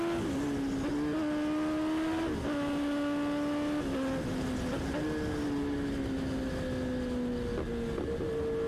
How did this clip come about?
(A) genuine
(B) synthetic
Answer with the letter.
A